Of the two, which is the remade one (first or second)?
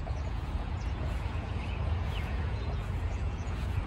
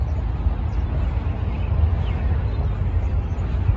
first